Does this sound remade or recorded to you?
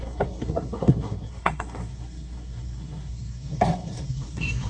remade